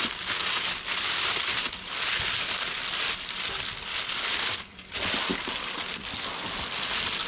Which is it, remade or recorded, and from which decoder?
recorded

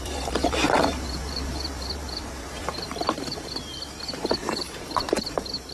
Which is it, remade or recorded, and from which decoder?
remade, vocoder, BigVGAN v2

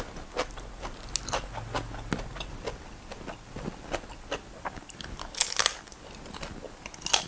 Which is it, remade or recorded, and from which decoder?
recorded